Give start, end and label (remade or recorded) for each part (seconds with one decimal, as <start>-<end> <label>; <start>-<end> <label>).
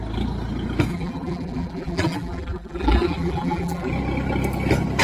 0.0-0.9 recorded; 0.9-3.9 remade; 3.9-5.0 recorded